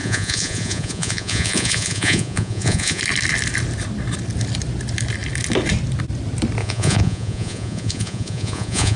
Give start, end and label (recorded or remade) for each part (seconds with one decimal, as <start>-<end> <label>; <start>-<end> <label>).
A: 0.0-3.0 remade; 3.0-6.6 recorded; 6.6-9.0 remade